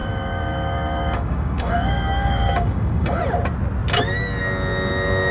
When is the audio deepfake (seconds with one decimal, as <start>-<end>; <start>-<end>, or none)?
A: 0.0-3.2